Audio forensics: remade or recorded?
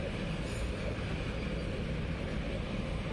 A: recorded